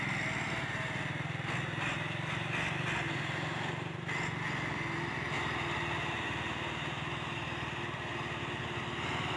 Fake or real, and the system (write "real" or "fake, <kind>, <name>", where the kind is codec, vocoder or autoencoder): real